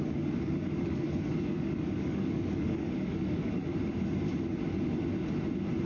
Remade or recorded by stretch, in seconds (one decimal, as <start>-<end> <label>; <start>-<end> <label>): 0.0-3.6 remade; 3.6-5.9 recorded